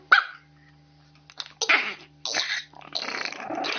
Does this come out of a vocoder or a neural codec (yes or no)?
no